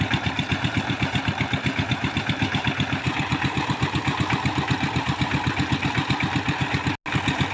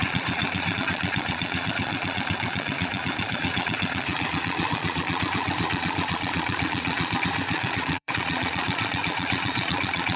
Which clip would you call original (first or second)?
first